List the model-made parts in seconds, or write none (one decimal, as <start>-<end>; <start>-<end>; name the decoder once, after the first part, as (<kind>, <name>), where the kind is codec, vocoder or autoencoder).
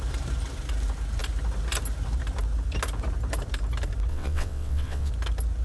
4.1-5.1 (vocoder, WaveNeXt)